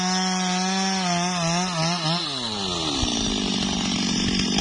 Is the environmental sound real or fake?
real